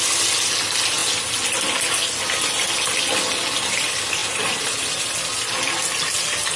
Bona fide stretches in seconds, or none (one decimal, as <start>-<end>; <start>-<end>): 0.0-6.6